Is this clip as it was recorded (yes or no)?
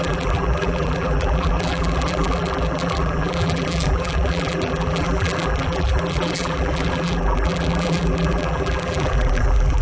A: no